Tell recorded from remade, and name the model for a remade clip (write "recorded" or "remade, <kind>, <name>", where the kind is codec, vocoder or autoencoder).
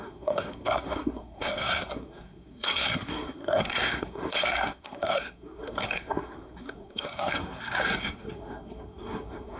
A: remade, codec, SNAC